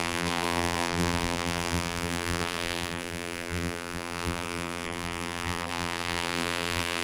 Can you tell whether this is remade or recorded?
remade